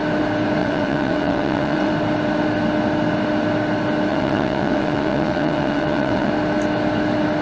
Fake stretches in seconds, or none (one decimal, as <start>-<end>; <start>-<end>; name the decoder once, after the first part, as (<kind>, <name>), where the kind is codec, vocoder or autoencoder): 0.6-1.9 (vocoder, WaveNeXt); 4.1-6.3

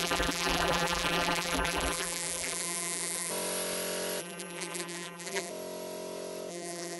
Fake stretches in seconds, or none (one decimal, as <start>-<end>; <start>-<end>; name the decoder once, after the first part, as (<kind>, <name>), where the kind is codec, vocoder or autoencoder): 0.0-3.3 (vocoder, BigVGAN v2); 4.2-5.5; 6.5-7.0

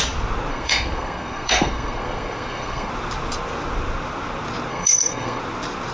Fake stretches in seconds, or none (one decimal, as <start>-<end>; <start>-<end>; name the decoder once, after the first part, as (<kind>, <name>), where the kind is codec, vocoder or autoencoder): 0.5-2.9 (codec, SNAC); 4.7-5.4